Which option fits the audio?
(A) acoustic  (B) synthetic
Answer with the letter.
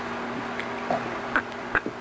A